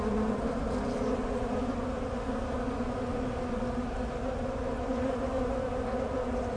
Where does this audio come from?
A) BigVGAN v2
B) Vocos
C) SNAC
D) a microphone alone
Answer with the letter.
D